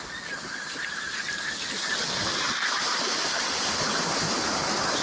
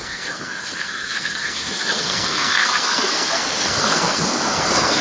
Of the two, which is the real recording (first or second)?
first